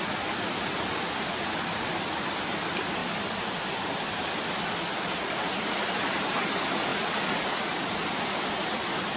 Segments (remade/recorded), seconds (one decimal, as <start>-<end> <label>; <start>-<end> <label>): 0.0-9.2 recorded